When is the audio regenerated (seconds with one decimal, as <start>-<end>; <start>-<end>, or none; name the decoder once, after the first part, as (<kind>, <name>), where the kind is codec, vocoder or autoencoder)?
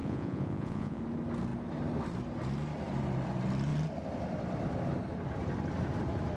0.0-1.0 (vocoder, Vocos)